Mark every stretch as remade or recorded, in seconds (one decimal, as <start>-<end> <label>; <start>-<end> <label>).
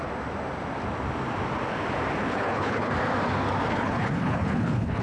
0.0-2.2 recorded; 2.2-2.9 remade; 2.9-3.7 recorded; 3.7-5.0 remade